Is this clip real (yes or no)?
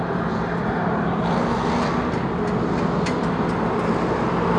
yes